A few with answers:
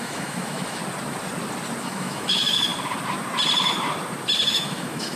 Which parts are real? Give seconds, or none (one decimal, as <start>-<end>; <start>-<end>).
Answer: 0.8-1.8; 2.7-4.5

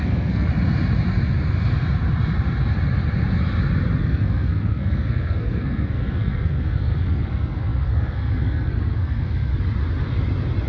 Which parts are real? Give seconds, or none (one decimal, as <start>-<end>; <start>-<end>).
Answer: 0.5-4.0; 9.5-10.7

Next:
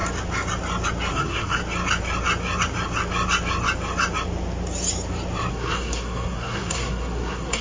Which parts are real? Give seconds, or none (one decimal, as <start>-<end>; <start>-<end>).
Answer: 0.0-1.1; 1.6-5.5